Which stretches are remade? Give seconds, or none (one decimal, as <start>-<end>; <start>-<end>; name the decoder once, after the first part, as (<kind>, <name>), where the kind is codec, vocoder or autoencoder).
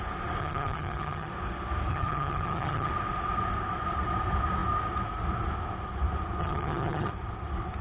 0.4-1.3 (vocoder, HiFi-GAN); 1.9-2.9; 6.4-7.1